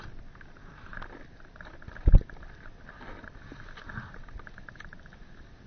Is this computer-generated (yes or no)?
no